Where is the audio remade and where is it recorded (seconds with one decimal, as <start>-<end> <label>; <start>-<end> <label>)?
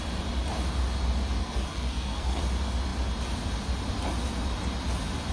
0.0-1.4 recorded; 1.4-2.4 remade; 2.4-5.3 recorded